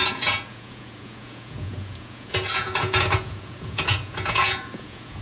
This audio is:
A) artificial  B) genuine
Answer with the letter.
A